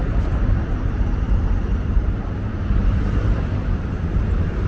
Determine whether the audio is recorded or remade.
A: remade